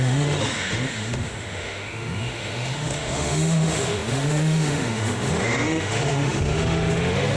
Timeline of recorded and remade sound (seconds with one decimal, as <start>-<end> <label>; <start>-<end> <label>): 0.0-7.4 remade